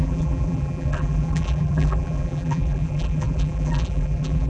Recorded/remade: remade